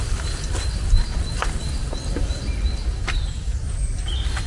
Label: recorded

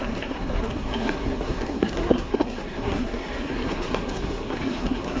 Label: remade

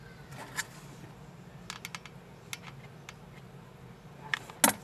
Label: recorded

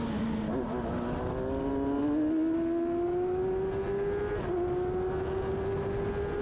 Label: recorded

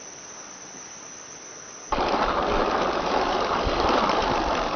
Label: recorded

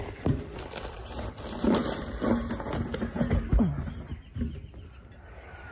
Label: recorded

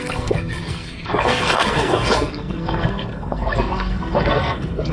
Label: remade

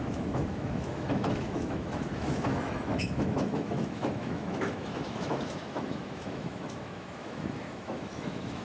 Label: remade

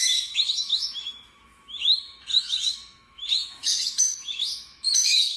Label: remade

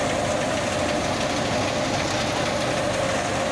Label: recorded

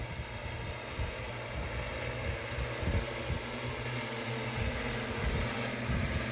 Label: recorded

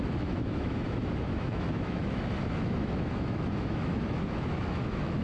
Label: remade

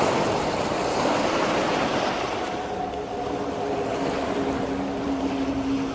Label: recorded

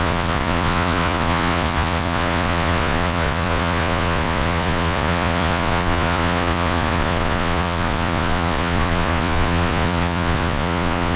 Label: remade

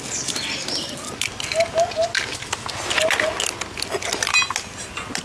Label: recorded